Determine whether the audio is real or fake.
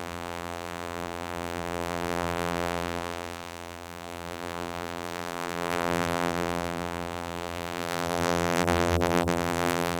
fake